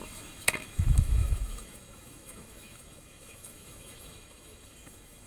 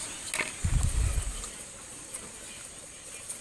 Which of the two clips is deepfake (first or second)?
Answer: first